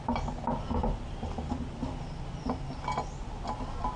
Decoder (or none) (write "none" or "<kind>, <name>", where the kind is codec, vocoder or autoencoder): none